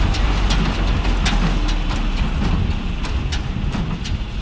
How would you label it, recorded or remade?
recorded